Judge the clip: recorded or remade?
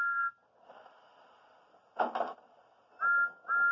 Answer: recorded